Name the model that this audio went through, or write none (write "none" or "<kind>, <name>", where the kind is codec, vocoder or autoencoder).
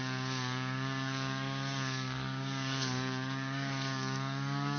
codec, DAC